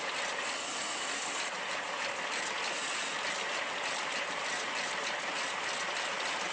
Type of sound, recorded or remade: recorded